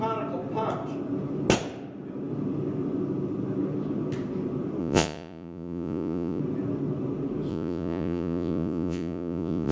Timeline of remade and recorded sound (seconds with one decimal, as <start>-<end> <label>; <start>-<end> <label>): 0.0-4.8 recorded; 4.8-6.4 remade; 6.4-7.5 recorded; 7.5-9.7 remade